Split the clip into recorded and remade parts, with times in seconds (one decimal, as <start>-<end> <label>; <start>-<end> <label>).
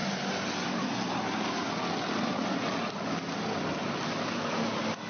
0.0-5.1 recorded